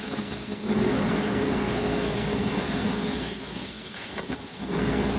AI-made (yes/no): yes